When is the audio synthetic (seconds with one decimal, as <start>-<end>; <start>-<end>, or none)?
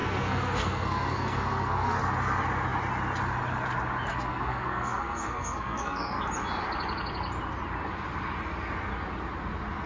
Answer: 0.0-2.0; 4.1-6.2